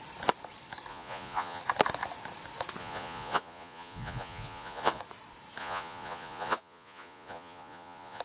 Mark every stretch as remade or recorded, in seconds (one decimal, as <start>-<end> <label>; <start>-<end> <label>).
0.0-0.9 recorded; 0.9-1.6 remade; 1.6-2.8 recorded; 2.8-5.0 remade; 5.0-5.6 recorded; 5.6-8.2 remade